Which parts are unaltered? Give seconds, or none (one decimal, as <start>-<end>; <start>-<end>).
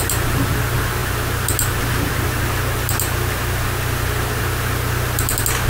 0.0-5.7